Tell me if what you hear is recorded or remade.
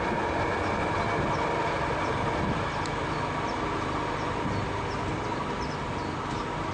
recorded